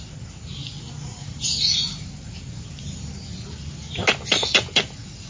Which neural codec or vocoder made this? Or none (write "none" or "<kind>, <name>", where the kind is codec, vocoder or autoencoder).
none